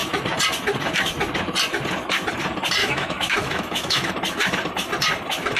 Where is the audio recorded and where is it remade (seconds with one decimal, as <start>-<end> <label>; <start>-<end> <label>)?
0.0-2.8 recorded; 2.8-4.1 remade; 4.1-5.6 recorded